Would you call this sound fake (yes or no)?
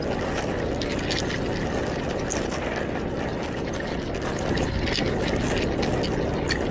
no